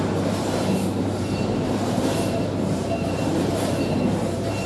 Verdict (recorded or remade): remade